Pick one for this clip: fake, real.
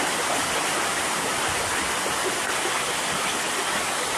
real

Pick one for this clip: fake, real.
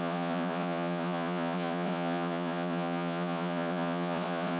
fake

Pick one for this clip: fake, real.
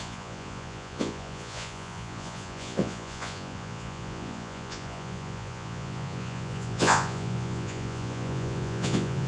fake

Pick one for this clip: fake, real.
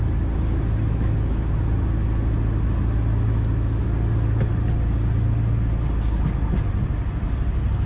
real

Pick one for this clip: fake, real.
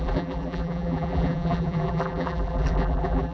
fake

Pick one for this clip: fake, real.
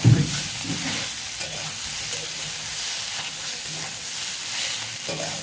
real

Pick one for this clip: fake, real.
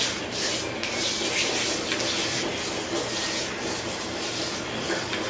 real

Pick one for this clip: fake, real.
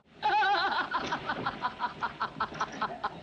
real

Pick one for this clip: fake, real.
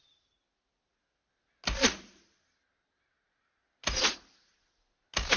real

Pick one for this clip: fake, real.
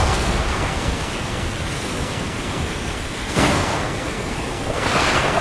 fake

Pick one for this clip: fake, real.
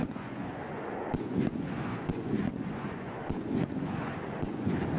fake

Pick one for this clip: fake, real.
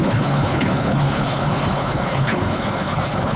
fake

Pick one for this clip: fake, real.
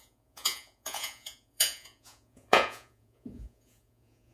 fake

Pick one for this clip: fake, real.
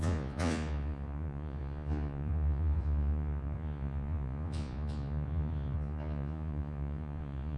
fake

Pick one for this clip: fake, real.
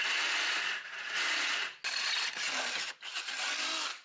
real